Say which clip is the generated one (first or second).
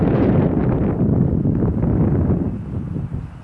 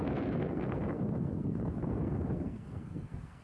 second